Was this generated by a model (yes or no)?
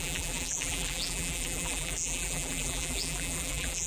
yes